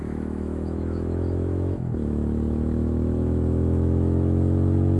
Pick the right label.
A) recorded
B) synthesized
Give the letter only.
B